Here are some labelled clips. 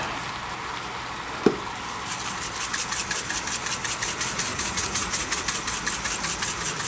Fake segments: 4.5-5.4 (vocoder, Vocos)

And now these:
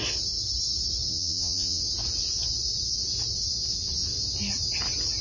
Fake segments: 1.1-1.8 (vocoder, Vocos)

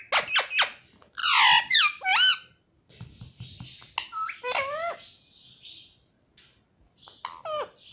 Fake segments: 1.2-1.8 (vocoder, Vocos)

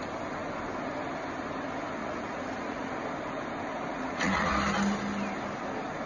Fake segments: 2.0-2.9 (vocoder, Vocos); 3.9-4.5

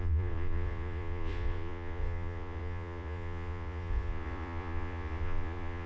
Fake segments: 0.0-5.9 (vocoder, Vocos)